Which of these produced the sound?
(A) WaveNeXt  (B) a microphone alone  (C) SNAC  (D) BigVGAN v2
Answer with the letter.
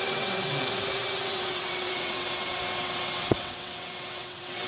A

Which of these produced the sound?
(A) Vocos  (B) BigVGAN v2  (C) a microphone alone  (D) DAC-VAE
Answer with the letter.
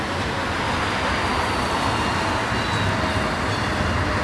C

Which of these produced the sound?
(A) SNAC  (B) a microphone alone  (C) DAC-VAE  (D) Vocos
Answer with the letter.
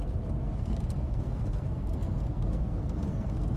A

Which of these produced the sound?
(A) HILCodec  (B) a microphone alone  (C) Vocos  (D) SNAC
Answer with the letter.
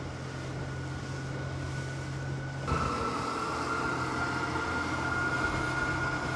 B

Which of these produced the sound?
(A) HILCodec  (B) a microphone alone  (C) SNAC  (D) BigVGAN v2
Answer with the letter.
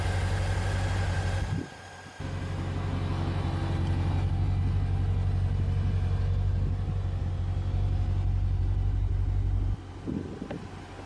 B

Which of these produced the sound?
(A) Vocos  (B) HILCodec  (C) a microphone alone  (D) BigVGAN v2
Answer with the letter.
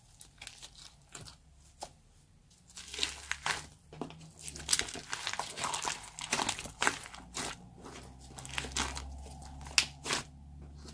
C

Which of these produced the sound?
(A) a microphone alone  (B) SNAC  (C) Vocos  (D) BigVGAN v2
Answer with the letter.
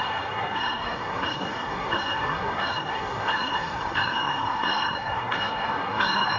B